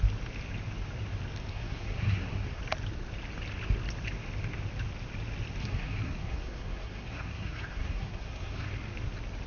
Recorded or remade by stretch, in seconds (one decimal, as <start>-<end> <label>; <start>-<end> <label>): 0.0-1.5 recorded; 1.5-2.6 remade; 2.6-5.6 recorded; 5.6-8.7 remade; 8.7-9.5 recorded